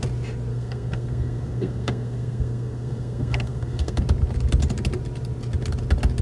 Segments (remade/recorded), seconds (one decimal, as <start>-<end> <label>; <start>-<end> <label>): 0.0-0.5 recorded; 0.5-4.0 remade; 4.0-6.2 recorded